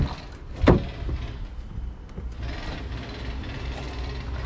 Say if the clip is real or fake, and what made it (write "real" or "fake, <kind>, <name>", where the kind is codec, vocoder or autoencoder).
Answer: real